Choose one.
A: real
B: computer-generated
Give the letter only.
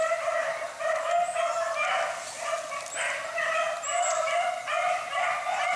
A